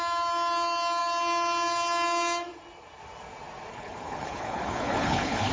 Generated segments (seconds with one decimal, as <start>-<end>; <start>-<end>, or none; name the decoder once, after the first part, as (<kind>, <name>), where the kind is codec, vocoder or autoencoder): 3.7-5.5 (codec, HILCodec)